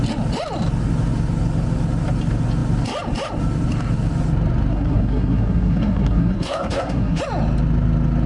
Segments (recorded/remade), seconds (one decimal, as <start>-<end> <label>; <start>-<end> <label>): 0.0-4.7 recorded; 4.7-7.2 remade; 7.2-8.3 recorded